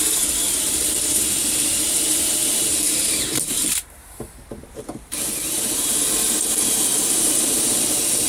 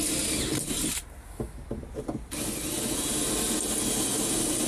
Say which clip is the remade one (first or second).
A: first